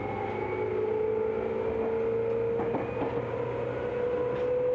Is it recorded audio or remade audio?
recorded